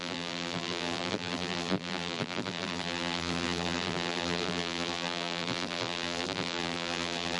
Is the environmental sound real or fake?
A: fake